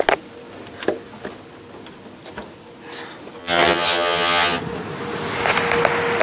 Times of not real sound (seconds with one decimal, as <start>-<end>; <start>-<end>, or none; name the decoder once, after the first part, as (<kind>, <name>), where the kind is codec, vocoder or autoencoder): 3.4-4.6 (vocoder, HiFi-GAN)